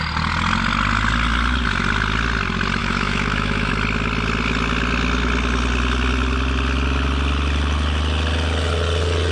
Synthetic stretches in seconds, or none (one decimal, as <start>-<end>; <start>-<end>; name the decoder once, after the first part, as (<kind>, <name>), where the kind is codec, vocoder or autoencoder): 2.8-3.7 (autoencoder, DAC-VAE)